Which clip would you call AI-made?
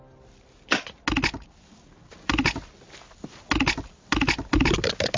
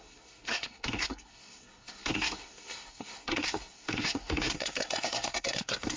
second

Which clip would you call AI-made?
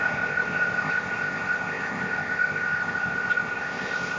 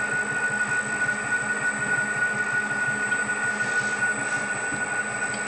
first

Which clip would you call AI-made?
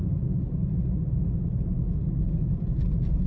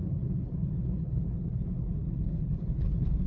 second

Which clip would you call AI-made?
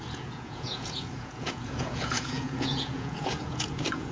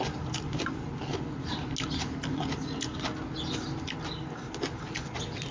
first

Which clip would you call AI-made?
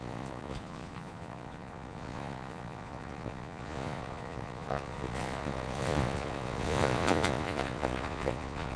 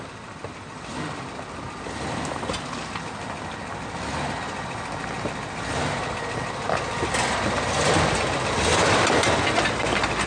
first